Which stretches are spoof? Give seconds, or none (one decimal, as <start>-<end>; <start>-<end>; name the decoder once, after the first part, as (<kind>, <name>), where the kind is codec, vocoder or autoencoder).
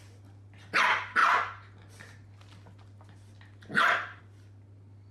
none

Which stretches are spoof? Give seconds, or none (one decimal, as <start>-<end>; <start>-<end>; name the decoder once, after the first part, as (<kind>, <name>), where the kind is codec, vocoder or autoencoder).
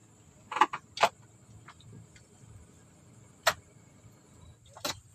none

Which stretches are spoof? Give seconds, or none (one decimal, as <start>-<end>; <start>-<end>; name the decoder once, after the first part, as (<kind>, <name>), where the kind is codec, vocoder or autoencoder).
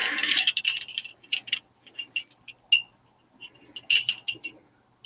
none